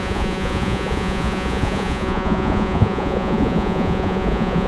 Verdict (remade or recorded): remade